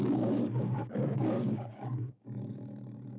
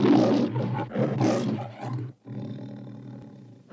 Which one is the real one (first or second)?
second